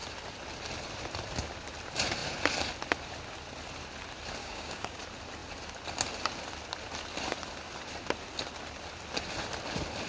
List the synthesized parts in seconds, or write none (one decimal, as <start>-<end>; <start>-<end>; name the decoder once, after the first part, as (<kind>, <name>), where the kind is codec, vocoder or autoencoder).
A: 4.4-5.0 (codec, DAC)